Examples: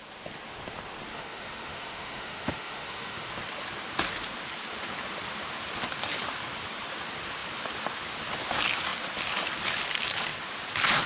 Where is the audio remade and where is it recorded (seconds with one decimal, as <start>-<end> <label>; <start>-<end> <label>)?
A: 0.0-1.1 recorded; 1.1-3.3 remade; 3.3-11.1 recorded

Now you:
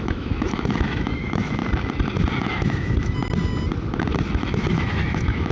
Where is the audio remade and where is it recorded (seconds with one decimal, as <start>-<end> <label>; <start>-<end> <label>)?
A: 0.0-1.6 remade; 1.6-2.4 recorded; 2.4-3.2 remade; 3.2-4.4 recorded; 4.4-5.5 remade

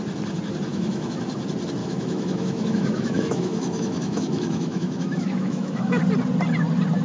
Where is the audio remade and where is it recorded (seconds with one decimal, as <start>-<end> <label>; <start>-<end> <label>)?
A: 0.0-0.7 recorded; 0.7-1.2 remade; 1.2-1.8 recorded; 1.8-6.0 remade; 6.0-7.0 recorded

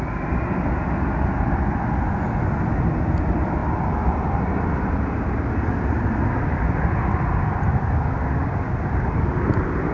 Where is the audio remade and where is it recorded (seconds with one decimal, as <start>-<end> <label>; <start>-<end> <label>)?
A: 0.0-9.9 recorded

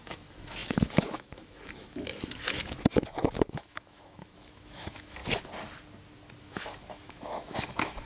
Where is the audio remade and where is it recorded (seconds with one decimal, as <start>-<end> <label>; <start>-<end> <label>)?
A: 0.0-5.2 remade; 5.2-6.4 recorded; 6.4-8.1 remade

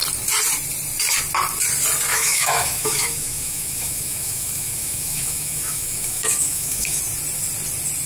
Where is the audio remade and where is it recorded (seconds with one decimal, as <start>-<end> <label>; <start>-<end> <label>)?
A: 0.0-2.1 recorded; 2.1-7.0 remade; 7.0-8.1 recorded

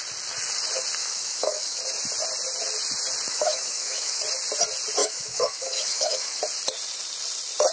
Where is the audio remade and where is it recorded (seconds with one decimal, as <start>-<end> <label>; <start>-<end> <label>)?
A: 0.0-1.0 recorded; 1.0-1.8 remade; 1.8-3.3 recorded; 3.3-4.2 remade; 4.2-5.0 recorded; 5.0-6.4 remade; 6.4-7.7 recorded

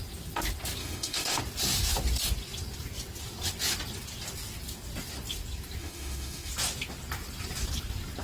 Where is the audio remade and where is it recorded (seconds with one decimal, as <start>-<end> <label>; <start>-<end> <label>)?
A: 0.0-0.8 recorded; 0.8-1.4 remade; 1.4-5.8 recorded; 5.8-6.5 remade; 6.5-8.2 recorded